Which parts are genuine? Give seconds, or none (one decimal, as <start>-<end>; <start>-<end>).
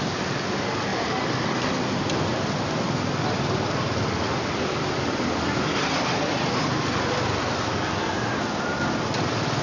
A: 0.0-9.6